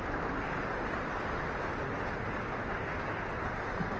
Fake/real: real